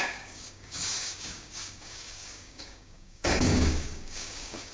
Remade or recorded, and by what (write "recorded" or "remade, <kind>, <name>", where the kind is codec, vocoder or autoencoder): remade, codec, DAC